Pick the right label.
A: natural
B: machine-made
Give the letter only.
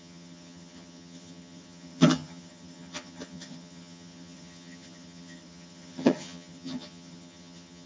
B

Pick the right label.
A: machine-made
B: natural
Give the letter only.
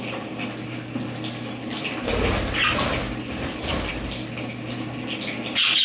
B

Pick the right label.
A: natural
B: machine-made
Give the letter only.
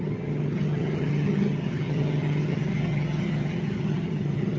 B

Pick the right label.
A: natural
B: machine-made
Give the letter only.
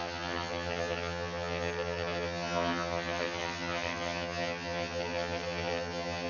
B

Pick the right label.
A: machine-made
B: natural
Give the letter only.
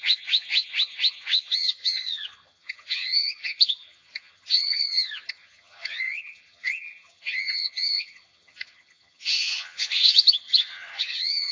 A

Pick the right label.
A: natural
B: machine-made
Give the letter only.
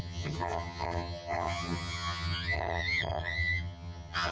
B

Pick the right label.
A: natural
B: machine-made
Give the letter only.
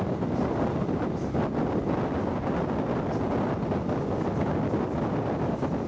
A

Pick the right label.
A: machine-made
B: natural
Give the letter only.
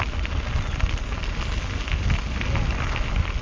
B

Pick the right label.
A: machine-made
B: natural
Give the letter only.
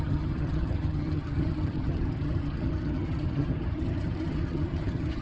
A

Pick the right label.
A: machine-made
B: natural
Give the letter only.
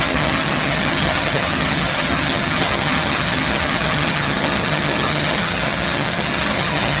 A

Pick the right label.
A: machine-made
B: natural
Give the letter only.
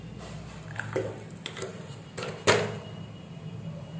B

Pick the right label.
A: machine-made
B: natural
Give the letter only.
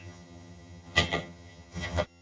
A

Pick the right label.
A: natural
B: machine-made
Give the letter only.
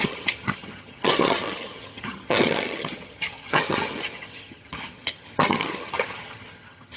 B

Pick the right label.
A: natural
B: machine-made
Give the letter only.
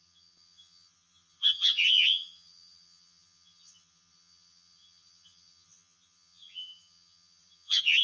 B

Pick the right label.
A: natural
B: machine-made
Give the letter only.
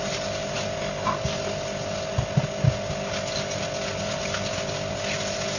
A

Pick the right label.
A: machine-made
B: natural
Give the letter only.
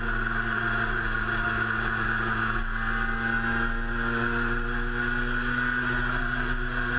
B